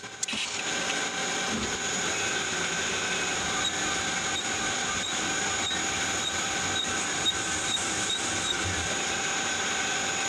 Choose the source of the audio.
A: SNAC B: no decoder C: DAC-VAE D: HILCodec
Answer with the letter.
B